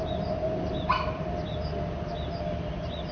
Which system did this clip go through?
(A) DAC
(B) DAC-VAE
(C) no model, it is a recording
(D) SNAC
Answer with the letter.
C